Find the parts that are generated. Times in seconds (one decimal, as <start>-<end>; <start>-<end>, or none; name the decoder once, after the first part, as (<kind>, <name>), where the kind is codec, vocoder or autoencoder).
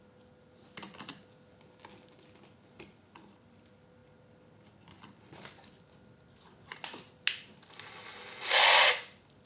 0.0-4.0 (vocoder, BigVGAN v2); 8.9-9.5